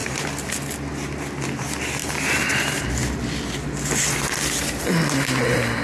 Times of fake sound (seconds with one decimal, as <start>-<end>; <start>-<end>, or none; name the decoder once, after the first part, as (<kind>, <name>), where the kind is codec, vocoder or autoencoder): 0.0-0.5 (vocoder, BigVGAN v2); 2.0-2.5

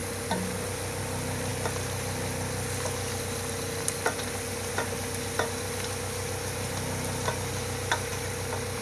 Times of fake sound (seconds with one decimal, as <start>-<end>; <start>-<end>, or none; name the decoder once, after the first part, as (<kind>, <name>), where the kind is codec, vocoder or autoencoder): none

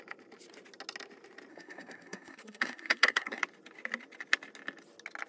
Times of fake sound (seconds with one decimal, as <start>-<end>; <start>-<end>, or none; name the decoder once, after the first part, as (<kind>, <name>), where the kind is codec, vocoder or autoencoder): 1.5-3.4 (codec, SNAC)

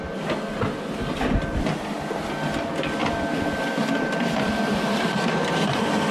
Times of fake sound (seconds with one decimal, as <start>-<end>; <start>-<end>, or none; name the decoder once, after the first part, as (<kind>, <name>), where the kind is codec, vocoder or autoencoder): 3.0-5.5 (vocoder, BigVGAN v2)

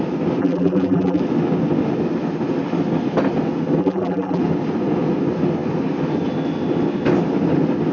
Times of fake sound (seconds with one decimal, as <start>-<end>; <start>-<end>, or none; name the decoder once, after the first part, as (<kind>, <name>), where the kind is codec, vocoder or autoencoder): 0.4-1.2 (vocoder, BigVGAN v2); 3.8-4.4

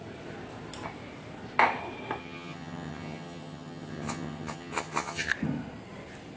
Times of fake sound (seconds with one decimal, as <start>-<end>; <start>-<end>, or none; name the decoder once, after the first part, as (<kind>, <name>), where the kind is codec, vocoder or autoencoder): 2.2-5.3 (vocoder, HiFi-GAN)